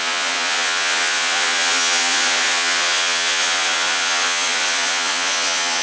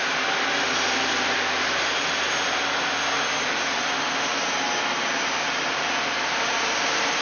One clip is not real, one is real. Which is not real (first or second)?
first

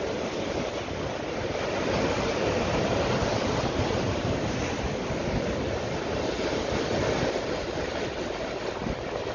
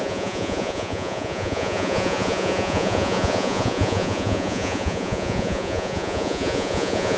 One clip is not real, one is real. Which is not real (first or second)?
second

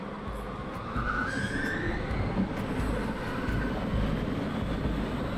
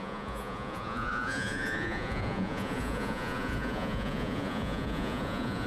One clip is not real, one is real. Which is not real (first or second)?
second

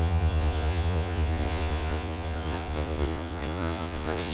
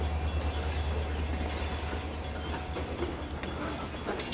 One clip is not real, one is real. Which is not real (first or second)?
first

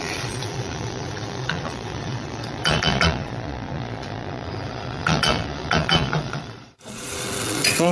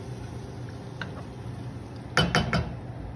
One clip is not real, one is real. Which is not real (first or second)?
first